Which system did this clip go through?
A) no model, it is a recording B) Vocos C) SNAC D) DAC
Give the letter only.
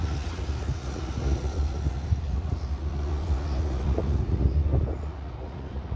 B